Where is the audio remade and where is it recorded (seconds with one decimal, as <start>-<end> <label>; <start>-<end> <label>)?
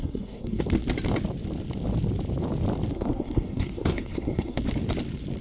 0.0-0.6 remade; 0.6-2.9 recorded; 2.9-4.6 remade; 4.6-5.4 recorded